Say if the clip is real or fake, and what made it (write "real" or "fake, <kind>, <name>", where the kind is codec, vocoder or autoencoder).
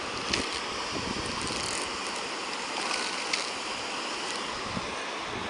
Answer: real